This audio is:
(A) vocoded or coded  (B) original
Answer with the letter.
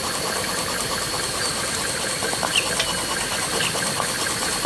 B